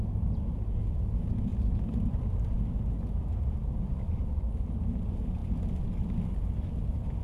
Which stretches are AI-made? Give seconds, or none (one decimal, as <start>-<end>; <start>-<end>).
1.5-2.4; 3.6-4.4; 5.4-6.2